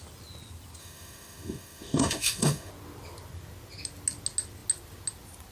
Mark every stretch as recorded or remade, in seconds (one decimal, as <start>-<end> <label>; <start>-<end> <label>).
0.0-0.8 recorded; 0.8-2.7 remade; 2.7-5.5 recorded